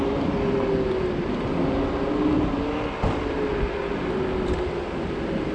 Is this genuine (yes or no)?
yes